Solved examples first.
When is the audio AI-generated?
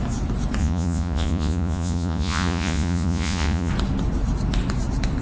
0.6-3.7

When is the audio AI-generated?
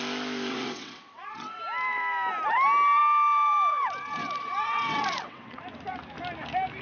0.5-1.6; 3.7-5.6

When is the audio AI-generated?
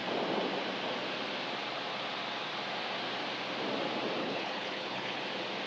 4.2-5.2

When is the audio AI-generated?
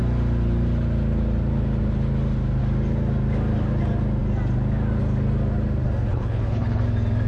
6.1-6.8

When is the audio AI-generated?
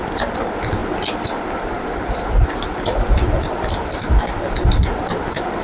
none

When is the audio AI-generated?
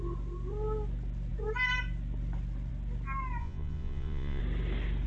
3.4-4.4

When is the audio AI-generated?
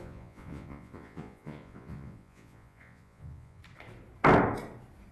0.0-3.6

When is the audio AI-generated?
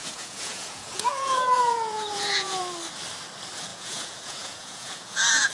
0.0-2.6; 3.7-5.5